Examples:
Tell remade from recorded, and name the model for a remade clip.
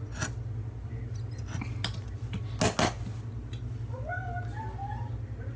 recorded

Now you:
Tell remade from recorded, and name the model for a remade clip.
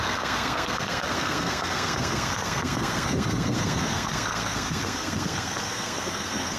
remade, codec, SNAC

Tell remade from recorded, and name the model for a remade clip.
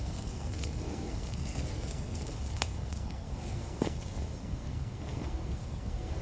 remade, codec, SNAC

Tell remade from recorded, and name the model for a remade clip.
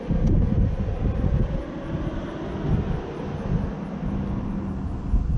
recorded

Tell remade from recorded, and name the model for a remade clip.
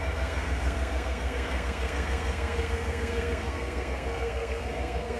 remade, codec, SNAC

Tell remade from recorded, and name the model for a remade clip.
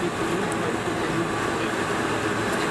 recorded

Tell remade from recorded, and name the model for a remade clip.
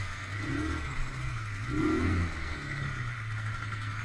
remade, codec, SNAC